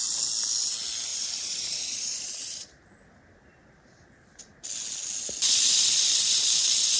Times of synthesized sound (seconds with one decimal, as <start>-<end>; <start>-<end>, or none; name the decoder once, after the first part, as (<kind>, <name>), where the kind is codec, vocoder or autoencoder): 1.1-4.4 (vocoder, BigVGAN v2)